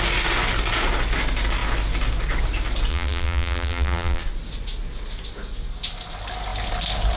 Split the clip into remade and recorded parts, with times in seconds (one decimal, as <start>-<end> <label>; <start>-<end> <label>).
0.0-2.9 recorded; 2.9-4.2 remade; 4.2-7.2 recorded